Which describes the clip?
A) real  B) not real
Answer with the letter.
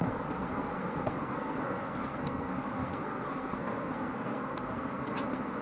B